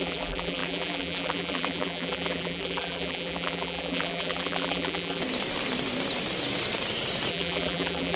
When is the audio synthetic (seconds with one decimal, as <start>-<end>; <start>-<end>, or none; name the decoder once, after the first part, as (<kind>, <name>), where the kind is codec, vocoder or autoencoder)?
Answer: 0.0-5.2 (vocoder, BigVGAN v2); 7.3-8.2